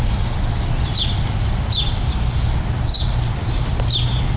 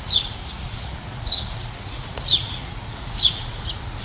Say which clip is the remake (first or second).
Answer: second